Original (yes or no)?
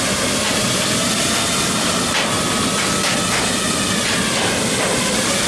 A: yes